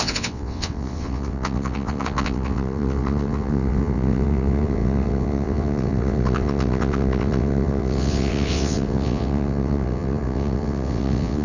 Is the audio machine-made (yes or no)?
yes